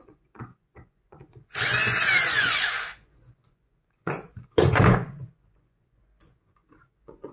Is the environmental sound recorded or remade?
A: remade